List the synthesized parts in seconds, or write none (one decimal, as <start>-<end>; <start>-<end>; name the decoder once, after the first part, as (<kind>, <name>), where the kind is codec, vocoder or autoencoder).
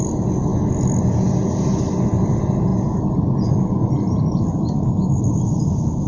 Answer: 2.7-5.3 (vocoder, BigVGAN v2)